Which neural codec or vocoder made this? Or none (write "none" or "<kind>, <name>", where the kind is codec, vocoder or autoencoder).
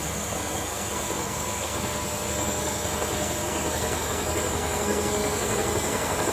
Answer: codec, SNAC